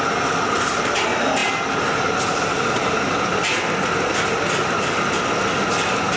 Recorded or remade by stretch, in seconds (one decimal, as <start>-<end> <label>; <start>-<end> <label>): 0.0-6.2 recorded

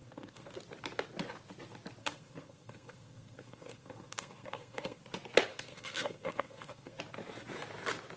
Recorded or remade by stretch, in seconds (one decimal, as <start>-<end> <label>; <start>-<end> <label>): 0.0-0.5 remade; 0.5-2.0 recorded; 2.0-5.0 remade; 5.0-5.5 recorded; 5.5-7.0 remade; 7.0-8.2 recorded

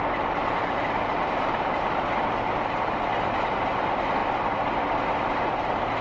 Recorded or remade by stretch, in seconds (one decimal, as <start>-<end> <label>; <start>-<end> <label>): 0.0-6.0 recorded